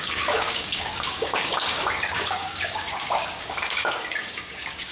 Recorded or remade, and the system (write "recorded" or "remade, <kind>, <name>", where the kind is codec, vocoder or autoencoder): remade, codec, DAC